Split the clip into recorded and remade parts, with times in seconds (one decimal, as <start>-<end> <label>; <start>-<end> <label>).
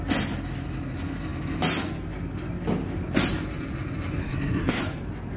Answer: 0.0-4.2 recorded; 4.2-4.8 remade; 4.8-5.4 recorded